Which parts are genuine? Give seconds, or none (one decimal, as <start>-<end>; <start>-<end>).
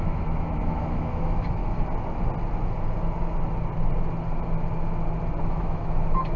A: 1.6-5.4